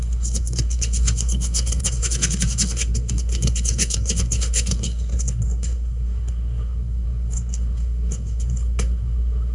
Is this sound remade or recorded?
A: remade